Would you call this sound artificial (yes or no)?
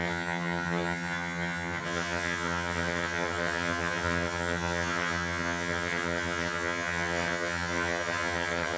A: yes